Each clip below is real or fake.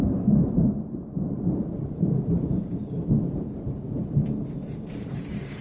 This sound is fake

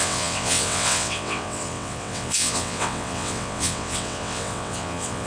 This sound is fake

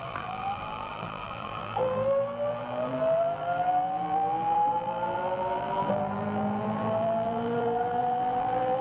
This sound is fake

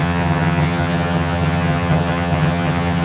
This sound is fake